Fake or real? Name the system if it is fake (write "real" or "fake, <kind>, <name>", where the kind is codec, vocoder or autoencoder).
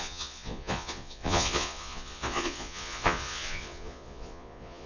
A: fake, vocoder, Vocos